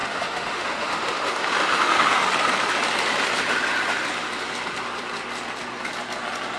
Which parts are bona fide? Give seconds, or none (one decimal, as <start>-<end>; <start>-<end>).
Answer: 2.2-6.6